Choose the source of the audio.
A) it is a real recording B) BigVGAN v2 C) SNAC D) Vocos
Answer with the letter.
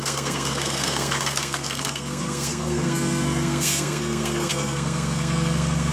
C